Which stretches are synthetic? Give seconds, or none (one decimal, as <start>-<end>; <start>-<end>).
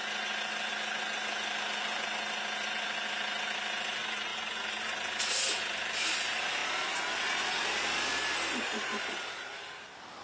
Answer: none